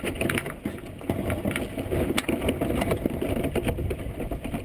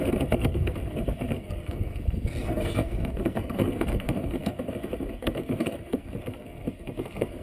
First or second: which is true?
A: first